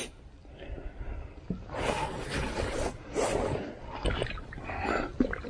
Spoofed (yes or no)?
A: no